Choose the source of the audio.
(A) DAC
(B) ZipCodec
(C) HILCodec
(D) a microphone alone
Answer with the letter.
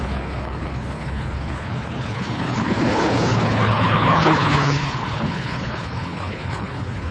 C